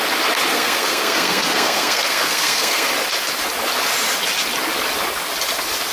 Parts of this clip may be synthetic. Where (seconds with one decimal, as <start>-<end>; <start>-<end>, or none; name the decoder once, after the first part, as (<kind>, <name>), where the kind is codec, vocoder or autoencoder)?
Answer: 0.5-2.9 (codec, SNAC)